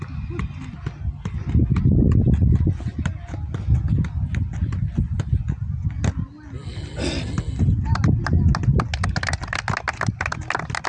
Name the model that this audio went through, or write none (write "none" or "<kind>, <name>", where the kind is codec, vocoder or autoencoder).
none